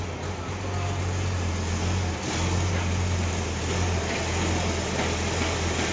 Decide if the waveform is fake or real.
real